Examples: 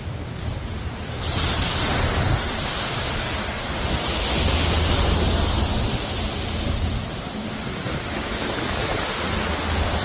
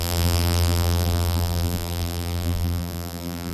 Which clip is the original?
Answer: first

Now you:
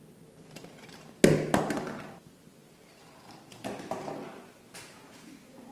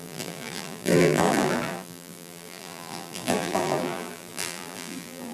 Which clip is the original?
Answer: first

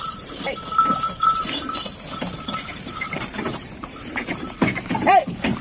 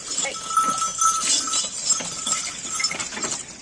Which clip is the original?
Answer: second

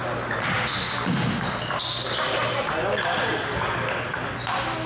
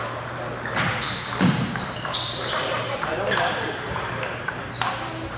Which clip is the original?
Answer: first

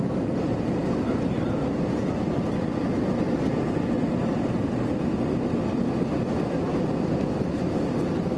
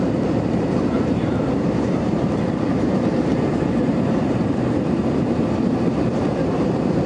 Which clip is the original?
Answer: first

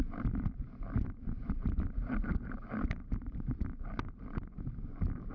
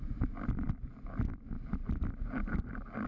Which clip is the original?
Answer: second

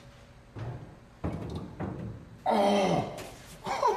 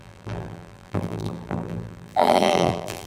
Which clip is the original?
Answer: first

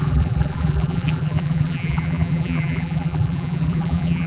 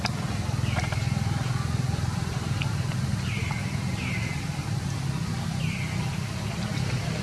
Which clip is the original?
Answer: second